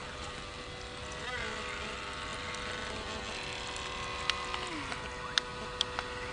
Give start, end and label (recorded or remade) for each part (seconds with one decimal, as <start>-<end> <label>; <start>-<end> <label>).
0.0-6.3 recorded